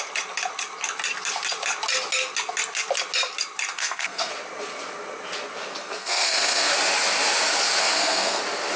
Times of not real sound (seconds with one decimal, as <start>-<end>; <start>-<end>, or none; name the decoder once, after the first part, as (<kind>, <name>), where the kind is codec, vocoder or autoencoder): 3.7-4.3 (codec, SNAC); 5.6-6.7; 7.8-8.4

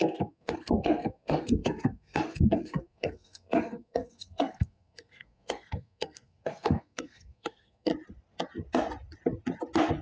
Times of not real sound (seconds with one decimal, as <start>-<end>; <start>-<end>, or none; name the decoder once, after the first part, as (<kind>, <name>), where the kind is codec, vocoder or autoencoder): 0.0-7.9 (codec, SNAC)

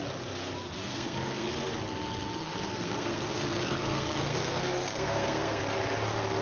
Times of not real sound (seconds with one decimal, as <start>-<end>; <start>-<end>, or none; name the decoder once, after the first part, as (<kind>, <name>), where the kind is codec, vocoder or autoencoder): 0.8-1.5 (codec, SNAC); 2.4-5.6

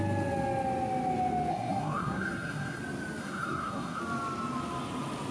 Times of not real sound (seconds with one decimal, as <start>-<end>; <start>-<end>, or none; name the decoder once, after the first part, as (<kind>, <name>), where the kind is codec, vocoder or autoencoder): 1.5-2.8 (codec, SNAC); 3.2-4.0

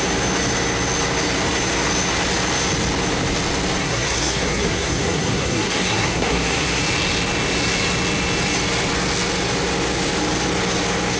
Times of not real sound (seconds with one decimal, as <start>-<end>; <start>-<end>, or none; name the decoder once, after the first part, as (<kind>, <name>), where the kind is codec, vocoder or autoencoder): 3.8-6.8 (codec, SNAC)

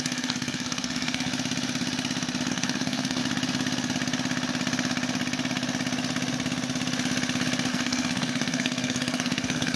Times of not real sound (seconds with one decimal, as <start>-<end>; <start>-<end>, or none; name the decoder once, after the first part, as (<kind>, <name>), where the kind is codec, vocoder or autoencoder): 0.0-1.3 (codec, SNAC); 2.5-3.2; 7.7-9.8